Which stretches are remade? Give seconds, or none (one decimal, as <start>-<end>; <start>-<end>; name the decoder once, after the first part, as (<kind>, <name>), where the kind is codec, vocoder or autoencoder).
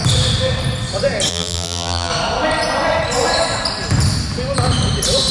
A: 1.3-2.1 (vocoder, BigVGAN v2)